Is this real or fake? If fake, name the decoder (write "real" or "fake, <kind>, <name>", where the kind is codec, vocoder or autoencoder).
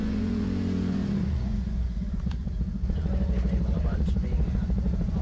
fake, vocoder, Vocos